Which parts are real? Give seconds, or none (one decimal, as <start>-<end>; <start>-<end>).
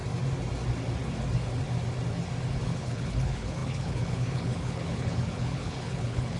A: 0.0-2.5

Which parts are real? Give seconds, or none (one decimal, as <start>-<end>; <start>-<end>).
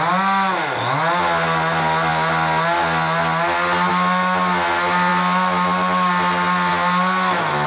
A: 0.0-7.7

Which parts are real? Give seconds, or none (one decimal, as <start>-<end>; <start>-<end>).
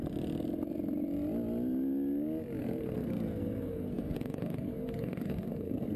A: 0.0-2.6